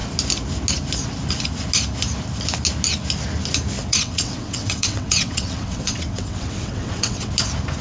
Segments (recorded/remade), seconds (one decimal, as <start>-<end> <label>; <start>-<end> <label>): 0.0-3.8 recorded; 3.8-7.3 remade; 7.3-7.8 recorded